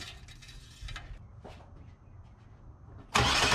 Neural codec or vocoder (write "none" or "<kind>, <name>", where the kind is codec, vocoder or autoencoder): none